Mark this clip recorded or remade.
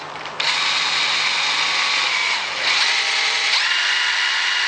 recorded